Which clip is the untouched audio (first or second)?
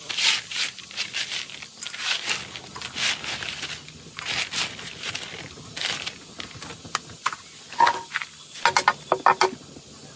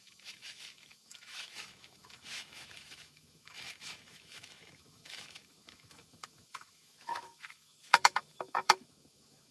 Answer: first